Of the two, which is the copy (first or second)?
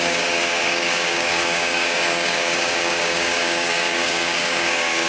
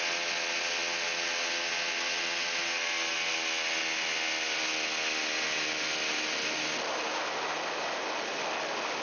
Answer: first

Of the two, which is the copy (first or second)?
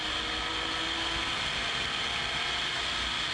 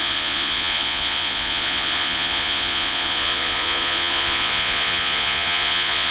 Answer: second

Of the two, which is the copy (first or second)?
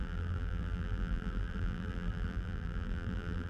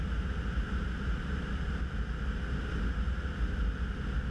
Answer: first